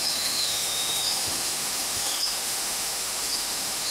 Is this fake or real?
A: fake